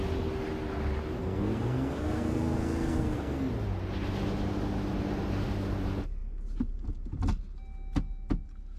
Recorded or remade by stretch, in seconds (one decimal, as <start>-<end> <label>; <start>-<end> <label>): 0.0-1.2 recorded; 1.2-3.5 remade; 3.5-8.8 recorded